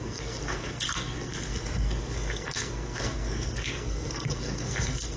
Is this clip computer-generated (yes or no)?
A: yes